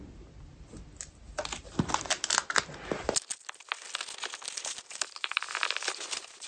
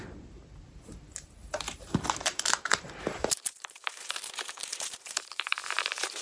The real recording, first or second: first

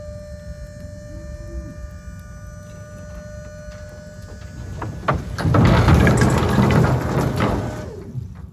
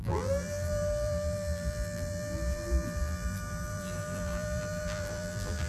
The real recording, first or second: first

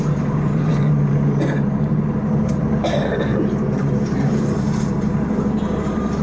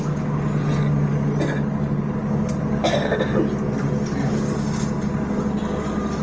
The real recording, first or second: second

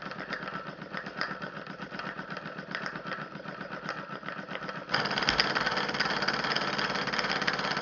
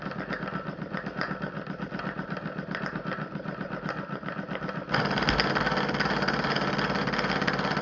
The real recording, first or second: second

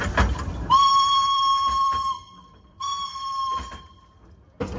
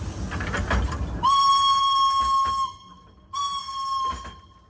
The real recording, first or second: second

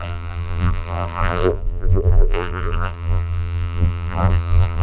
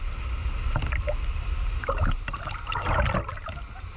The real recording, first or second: second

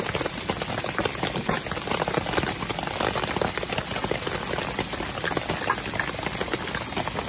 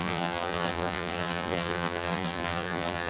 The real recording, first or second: first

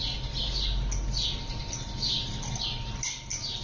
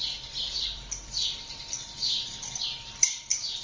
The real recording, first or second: first